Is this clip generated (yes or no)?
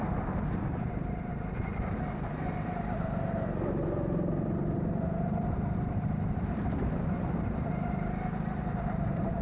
yes